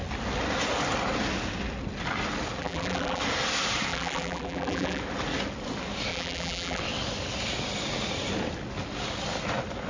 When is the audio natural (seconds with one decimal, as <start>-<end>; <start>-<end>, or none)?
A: 0.0-2.6; 3.2-3.9; 5.0-6.1; 6.8-9.9